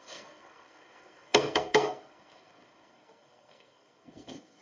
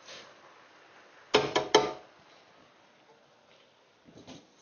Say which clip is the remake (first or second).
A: first